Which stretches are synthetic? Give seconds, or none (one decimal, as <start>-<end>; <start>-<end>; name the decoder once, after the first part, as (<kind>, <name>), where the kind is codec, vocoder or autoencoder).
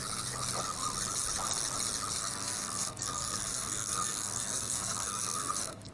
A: 2.2-5.9 (codec, SNAC)